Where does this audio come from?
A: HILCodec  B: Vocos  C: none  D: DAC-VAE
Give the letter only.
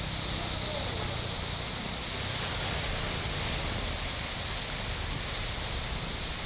C